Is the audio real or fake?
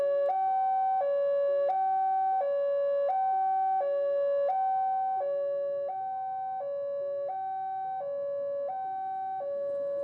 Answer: real